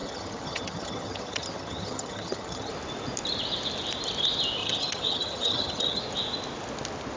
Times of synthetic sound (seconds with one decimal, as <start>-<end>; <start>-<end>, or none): 0.0-2.7; 4.6-6.0